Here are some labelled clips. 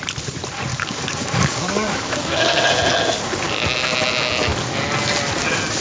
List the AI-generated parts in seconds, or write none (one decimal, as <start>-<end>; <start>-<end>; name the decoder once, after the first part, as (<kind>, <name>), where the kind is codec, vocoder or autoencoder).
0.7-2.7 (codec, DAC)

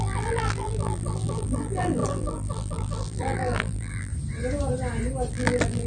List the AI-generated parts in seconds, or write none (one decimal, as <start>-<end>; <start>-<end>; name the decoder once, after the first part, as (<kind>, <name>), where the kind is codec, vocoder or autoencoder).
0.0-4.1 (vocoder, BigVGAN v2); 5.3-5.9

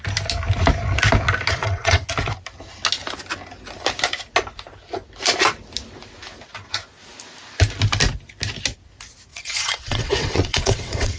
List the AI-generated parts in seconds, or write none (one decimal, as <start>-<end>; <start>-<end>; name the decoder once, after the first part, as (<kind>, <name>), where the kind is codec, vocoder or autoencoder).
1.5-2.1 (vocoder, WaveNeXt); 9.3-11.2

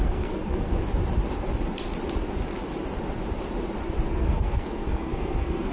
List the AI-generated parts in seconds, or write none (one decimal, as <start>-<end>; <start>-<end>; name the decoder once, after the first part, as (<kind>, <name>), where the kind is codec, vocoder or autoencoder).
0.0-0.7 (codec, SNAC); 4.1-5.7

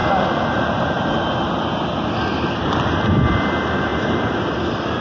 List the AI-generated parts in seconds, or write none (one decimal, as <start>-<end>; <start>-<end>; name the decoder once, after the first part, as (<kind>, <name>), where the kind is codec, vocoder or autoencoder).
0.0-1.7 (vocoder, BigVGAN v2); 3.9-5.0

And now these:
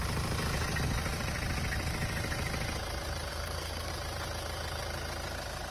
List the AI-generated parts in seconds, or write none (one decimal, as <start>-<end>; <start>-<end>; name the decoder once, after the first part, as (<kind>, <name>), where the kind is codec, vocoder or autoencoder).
3.3-3.9 (codec, SNAC)

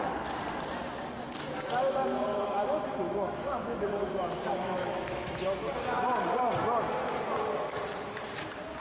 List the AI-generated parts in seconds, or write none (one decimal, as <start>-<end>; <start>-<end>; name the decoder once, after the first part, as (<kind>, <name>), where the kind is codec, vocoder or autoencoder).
2.3-5.7 (autoencoder, DAC-VAE)

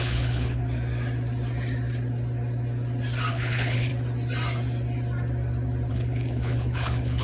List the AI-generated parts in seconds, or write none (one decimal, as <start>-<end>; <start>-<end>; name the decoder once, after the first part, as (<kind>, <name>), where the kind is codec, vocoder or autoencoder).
0.0-0.6 (codec, HILCodec); 3.3-3.9; 5.9-7.2